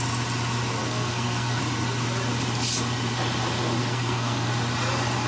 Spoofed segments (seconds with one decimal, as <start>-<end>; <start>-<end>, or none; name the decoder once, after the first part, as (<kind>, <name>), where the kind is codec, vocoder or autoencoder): 0.8-1.6 (codec, SNAC); 3.8-4.5